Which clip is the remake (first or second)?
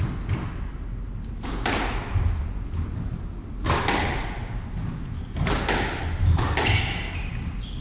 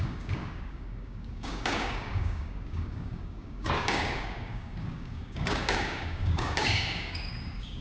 second